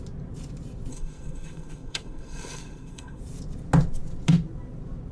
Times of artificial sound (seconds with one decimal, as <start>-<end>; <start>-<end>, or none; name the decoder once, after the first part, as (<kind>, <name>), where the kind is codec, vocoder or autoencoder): 0.9-3.2 (codec, SNAC)

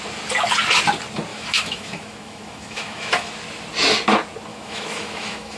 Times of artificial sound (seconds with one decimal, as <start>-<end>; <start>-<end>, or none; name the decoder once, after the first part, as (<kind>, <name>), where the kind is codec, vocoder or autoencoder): 1.3-3.3 (autoencoder, DAC-VAE); 4.5-5.6

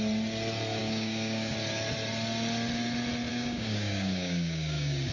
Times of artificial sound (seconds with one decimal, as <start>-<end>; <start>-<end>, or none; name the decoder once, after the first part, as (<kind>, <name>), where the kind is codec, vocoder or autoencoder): 0.8-1.5 (codec, DAC); 3.3-5.1

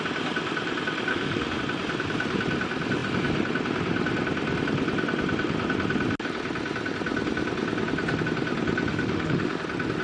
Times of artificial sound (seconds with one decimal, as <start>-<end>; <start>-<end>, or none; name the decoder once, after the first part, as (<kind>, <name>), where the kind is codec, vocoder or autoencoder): 1.1-1.6 (autoencoder, DAC-VAE); 8.9-9.6

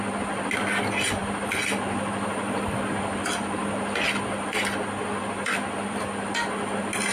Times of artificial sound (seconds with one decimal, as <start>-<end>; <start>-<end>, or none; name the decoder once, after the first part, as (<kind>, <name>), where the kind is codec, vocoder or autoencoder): none

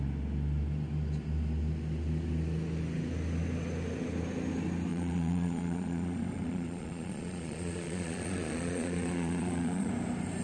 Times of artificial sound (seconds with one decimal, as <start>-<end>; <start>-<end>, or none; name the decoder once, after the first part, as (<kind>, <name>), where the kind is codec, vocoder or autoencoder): 4.9-9.9 (vocoder, Vocos)

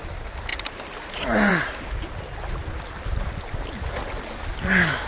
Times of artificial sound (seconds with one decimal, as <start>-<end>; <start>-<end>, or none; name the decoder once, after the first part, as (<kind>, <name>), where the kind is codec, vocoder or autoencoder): none